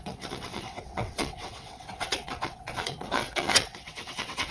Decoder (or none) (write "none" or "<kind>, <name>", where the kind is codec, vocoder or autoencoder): vocoder, WaveNeXt